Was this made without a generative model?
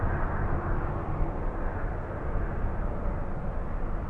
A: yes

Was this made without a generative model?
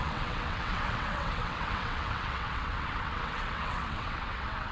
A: no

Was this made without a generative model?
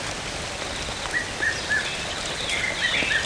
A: yes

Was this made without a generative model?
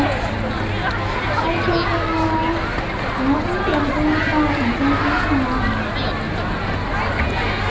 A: yes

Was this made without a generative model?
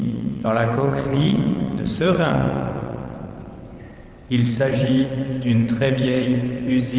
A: no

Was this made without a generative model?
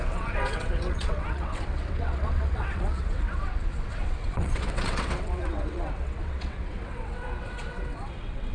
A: no